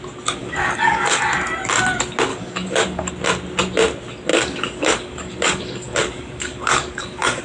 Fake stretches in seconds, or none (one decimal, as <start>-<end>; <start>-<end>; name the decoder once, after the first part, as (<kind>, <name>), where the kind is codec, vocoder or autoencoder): 0.4-1.2 (codec, DAC); 2.3-3.1; 4.3-7.4